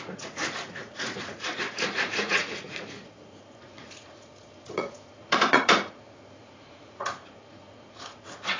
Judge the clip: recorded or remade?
remade